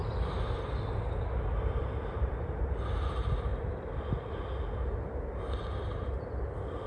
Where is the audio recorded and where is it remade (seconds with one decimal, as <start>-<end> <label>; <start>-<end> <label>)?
0.0-0.6 remade; 0.6-1.8 recorded; 1.8-2.6 remade; 2.6-6.9 recorded